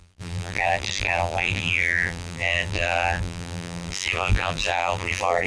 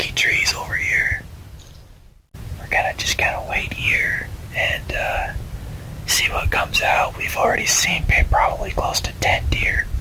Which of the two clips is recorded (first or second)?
second